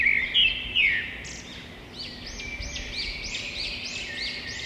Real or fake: real